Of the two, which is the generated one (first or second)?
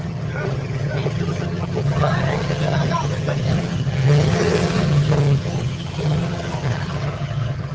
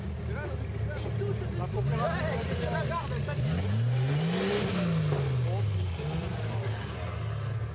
first